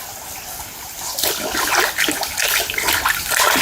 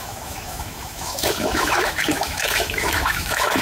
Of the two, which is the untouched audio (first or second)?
first